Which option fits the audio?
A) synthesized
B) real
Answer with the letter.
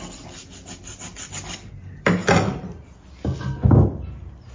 B